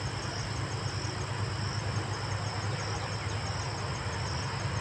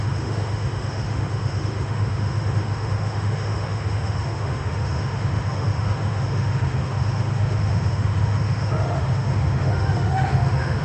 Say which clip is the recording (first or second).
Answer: first